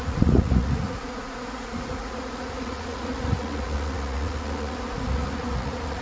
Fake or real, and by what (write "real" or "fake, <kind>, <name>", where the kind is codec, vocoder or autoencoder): fake, vocoder, Vocos